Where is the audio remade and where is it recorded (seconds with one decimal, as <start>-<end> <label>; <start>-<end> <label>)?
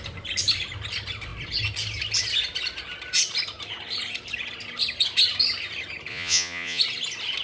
0.0-6.1 recorded; 6.1-6.8 remade; 6.8-7.4 recorded